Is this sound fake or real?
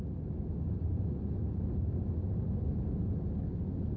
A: real